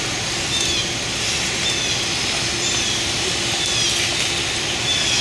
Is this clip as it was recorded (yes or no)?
yes